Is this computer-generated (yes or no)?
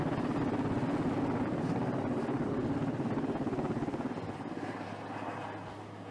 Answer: no